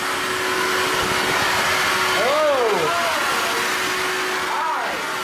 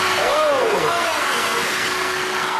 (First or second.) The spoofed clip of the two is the second